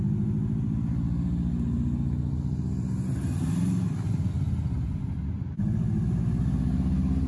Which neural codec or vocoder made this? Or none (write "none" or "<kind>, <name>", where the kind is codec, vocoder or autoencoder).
none